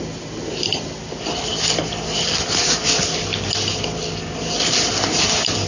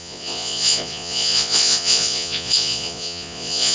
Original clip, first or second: first